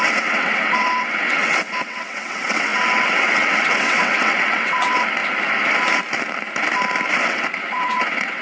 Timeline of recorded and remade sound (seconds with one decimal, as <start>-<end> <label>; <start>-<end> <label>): 0.0-5.2 remade; 5.2-7.2 recorded; 7.2-8.4 remade